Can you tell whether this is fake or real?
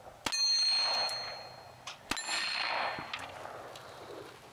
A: real